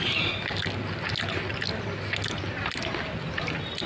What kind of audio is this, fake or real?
real